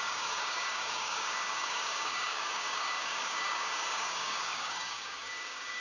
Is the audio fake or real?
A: fake